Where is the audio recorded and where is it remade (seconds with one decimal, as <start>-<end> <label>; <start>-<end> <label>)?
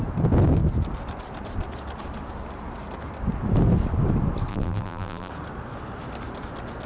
0.0-4.5 recorded; 4.5-5.3 remade; 5.3-6.9 recorded